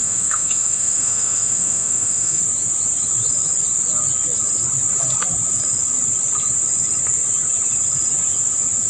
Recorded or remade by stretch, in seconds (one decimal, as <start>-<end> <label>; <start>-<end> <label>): 0.0-2.4 remade; 2.4-8.9 recorded